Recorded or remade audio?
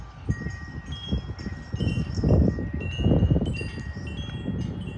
recorded